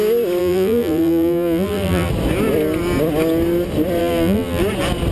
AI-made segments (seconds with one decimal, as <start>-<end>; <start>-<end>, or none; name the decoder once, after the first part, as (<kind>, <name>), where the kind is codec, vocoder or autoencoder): 0.4-2.1 (vocoder, BigVGAN v2); 4.0-4.6